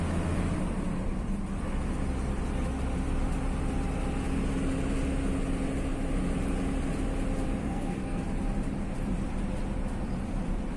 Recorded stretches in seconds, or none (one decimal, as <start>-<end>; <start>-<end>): 0.0-7.6; 8.2-10.8